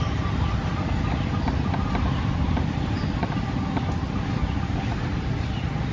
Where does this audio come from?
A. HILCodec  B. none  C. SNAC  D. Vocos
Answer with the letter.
B